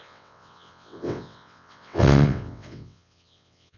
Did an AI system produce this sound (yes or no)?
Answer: yes